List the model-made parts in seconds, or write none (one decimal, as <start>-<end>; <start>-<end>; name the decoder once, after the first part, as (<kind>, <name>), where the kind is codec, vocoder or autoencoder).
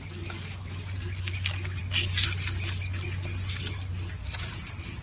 none